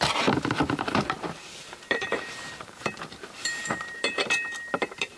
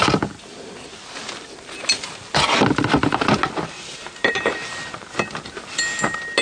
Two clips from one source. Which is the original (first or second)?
second